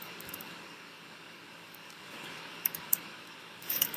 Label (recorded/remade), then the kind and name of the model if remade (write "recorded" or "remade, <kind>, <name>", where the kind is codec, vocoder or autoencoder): remade, codec, DAC